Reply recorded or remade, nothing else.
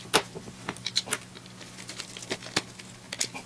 recorded